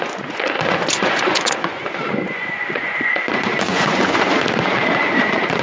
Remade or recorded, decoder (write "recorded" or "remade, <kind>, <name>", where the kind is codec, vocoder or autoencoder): remade, vocoder, Vocos